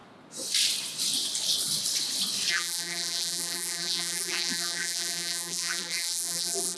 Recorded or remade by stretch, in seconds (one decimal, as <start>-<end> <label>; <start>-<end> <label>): 0.0-2.5 recorded; 2.5-6.8 remade